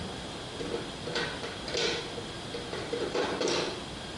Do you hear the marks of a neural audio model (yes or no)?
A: yes